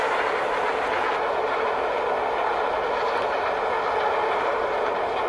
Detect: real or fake real